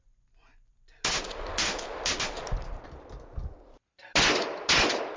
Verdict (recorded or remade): recorded